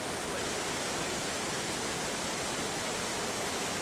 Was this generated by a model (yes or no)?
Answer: no